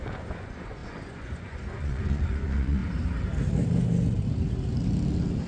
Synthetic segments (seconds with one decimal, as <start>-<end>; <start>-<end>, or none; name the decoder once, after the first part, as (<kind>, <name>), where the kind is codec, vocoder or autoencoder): 0.0-2.8 (vocoder, Vocos)